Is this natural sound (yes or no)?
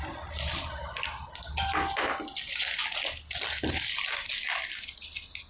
yes